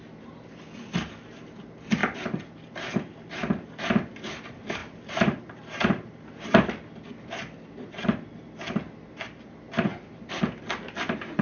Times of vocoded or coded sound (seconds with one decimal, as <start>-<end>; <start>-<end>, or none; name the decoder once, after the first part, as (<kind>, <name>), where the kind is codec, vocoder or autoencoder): 4.8-6.3 (vocoder, BigVGAN v2)